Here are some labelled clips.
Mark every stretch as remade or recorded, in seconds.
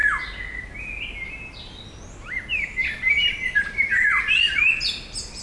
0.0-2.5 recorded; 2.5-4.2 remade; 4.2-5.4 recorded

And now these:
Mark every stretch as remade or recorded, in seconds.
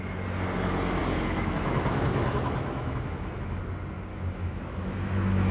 0.0-1.0 recorded; 1.0-3.6 remade; 3.6-4.1 recorded; 4.1-5.5 remade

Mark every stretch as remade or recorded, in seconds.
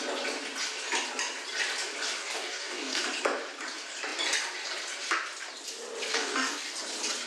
0.0-2.2 recorded; 2.2-3.0 remade; 3.0-6.1 recorded; 6.1-6.8 remade; 6.8-7.3 recorded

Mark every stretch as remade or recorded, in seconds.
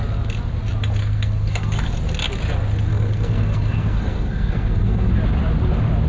0.0-1.0 recorded; 1.0-1.9 remade; 1.9-2.9 recorded; 2.9-5.1 remade; 5.1-6.1 recorded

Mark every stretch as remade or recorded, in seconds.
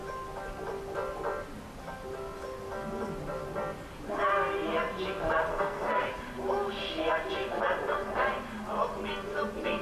0.0-5.5 recorded; 5.5-6.1 remade; 6.1-9.8 recorded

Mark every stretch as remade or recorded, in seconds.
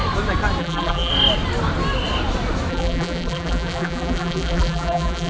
0.0-0.6 recorded; 0.6-1.1 remade; 1.1-2.7 recorded; 2.7-5.3 remade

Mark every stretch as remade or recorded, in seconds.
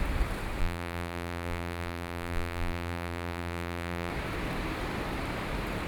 0.0-0.6 recorded; 0.6-4.1 remade; 4.1-5.9 recorded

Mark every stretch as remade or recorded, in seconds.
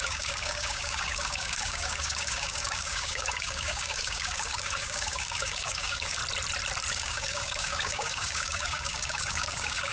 0.0-6.2 remade; 6.2-6.9 recorded; 6.9-9.9 remade